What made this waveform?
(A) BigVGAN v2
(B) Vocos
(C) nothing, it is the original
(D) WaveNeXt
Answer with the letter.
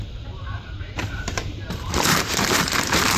A